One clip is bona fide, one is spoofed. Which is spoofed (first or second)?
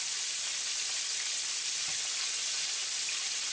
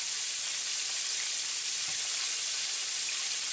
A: second